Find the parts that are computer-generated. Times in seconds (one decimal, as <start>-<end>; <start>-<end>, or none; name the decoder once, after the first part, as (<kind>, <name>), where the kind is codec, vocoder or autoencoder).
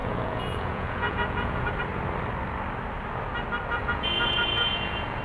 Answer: 0.0-1.7 (vocoder, Vocos); 3.7-5.2